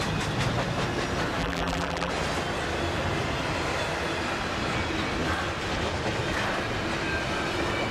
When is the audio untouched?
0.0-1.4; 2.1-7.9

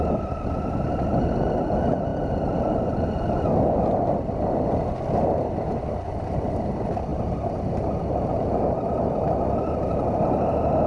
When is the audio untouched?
0.0-10.9

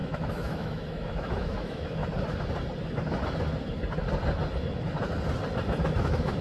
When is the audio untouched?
2.0-5.8

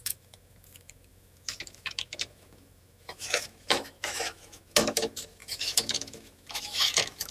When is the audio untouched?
none

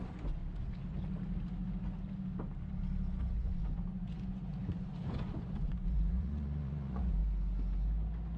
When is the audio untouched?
0.4-3.2; 7.2-8.4